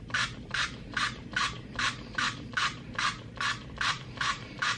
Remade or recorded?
remade